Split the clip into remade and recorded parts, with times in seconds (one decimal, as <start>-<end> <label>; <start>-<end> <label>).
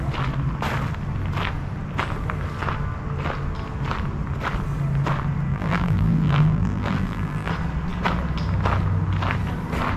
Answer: 0.0-5.5 recorded; 5.5-7.5 remade; 7.5-10.0 recorded